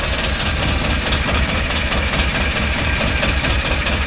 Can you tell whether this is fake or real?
fake